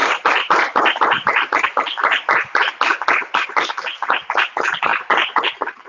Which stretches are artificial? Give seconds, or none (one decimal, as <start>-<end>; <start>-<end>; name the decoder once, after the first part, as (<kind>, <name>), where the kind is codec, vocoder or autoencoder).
none